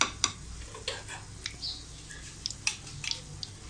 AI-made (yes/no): no